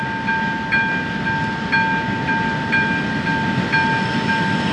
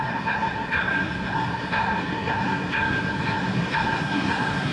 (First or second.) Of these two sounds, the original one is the first